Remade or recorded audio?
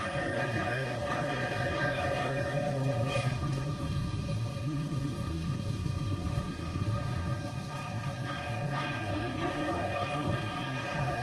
remade